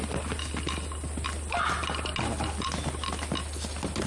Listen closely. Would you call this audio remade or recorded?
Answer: recorded